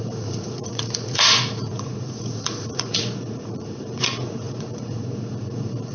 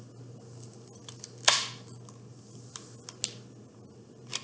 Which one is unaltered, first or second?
second